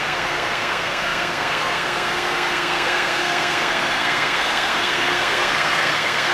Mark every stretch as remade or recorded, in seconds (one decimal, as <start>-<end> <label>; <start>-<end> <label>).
0.0-6.3 remade

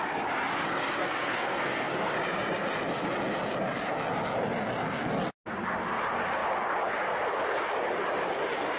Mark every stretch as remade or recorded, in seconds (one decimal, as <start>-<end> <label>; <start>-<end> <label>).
0.0-1.0 recorded; 1.0-2.1 remade; 2.1-8.8 recorded

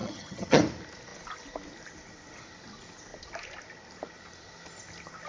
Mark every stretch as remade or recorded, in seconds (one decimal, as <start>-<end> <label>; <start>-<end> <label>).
0.0-0.6 remade; 0.6-5.3 recorded